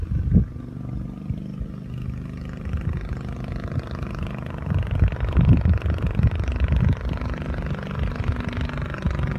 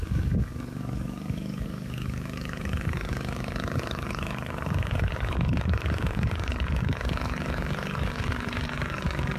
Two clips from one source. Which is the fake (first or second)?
second